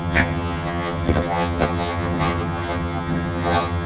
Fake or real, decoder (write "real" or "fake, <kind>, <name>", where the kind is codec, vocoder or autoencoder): fake, vocoder, HiFi-GAN